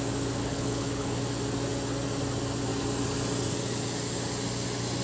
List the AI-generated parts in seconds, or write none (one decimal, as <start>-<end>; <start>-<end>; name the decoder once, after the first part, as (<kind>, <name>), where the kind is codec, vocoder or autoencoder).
0.4-1.2 (codec, HILCodec)